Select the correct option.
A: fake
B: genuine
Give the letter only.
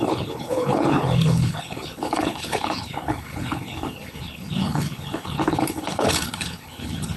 A